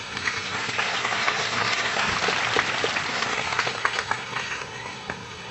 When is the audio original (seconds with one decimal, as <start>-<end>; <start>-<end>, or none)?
2.1-3.1